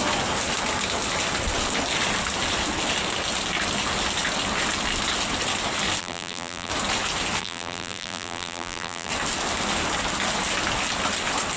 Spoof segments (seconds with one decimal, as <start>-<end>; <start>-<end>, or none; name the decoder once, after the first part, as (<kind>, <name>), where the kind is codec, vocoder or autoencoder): 6.0-6.7 (vocoder, BigVGAN v2); 7.4-9.1